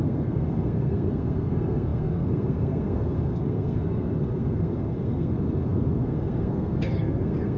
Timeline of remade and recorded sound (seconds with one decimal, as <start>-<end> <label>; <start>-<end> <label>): 0.0-7.6 remade